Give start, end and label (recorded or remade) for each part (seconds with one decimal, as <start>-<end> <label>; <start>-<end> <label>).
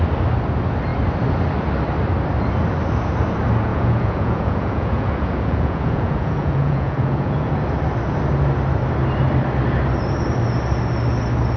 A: 0.0-3.7 recorded; 3.7-7.5 remade; 7.5-11.6 recorded